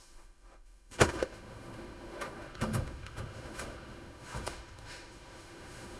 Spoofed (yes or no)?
yes